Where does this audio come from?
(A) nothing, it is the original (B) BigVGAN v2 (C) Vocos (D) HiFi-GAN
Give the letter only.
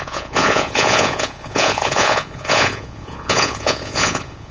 C